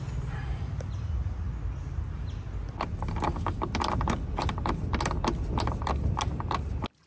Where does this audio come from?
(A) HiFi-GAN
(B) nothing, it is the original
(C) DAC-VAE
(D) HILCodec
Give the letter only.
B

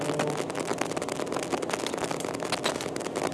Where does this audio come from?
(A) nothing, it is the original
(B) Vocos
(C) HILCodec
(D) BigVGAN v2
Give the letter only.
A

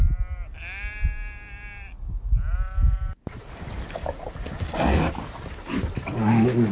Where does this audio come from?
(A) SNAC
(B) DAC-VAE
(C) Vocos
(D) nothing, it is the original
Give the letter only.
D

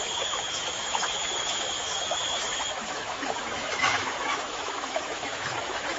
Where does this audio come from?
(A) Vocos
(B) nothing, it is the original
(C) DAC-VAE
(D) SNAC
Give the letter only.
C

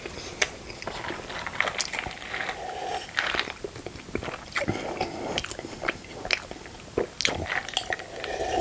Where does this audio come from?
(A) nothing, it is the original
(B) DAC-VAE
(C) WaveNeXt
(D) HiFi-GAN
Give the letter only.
A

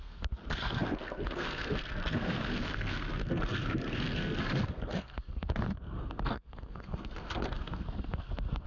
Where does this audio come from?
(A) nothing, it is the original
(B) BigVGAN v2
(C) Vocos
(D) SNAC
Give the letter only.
D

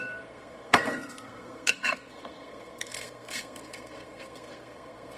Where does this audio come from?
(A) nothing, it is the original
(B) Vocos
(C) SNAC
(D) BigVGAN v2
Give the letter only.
C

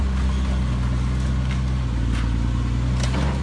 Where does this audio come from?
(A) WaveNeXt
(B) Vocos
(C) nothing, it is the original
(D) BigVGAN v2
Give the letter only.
C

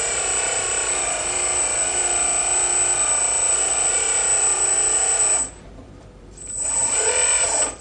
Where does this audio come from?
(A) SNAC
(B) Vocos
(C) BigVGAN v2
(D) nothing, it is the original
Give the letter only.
C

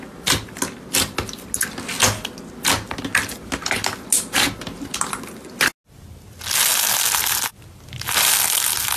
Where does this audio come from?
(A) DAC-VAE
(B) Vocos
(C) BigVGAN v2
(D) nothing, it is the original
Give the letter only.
D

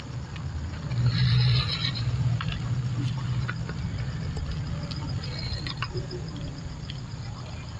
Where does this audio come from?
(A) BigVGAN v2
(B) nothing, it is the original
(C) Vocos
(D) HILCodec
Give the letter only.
B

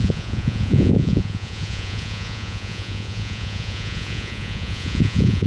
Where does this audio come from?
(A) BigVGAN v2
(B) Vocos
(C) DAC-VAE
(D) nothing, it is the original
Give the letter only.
B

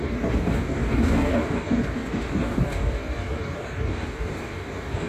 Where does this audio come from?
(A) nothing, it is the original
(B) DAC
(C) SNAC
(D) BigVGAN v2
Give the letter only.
B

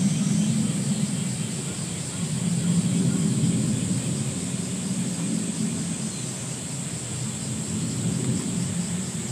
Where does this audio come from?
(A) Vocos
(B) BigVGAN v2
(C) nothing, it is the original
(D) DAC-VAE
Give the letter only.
C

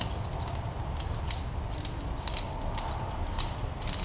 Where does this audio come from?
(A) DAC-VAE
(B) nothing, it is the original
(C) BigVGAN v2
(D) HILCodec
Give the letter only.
B